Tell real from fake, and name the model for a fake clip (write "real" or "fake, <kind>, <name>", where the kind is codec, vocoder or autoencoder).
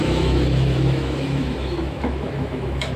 fake, autoencoder, DAC-VAE